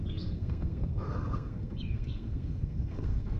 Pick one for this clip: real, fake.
fake